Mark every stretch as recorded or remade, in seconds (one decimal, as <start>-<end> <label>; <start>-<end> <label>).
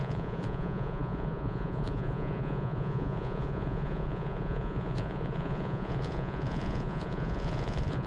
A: 0.0-8.1 remade